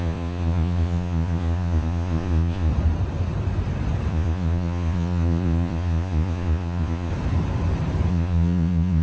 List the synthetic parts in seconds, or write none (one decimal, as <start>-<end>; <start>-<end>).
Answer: 0.0-2.7; 4.1-7.1; 8.1-9.0